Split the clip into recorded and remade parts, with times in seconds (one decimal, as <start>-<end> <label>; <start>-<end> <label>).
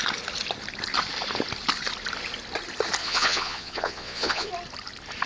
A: 0.0-3.0 recorded; 3.0-4.5 remade; 4.5-5.3 recorded